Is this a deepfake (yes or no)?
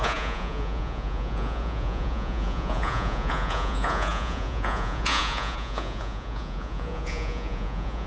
yes